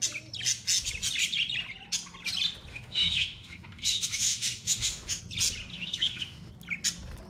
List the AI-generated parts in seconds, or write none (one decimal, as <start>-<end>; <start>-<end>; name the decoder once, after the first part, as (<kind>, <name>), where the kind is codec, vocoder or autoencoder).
2.7-5.2 (autoencoder, DAC-VAE); 5.7-6.5